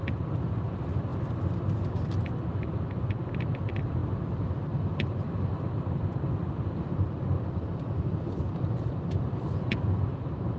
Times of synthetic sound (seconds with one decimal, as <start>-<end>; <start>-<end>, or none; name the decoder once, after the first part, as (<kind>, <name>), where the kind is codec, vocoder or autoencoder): 0.0-1.1 (vocoder, BigVGAN v2); 3.3-10.6